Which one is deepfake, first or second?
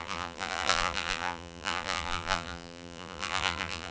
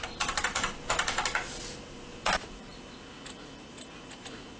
first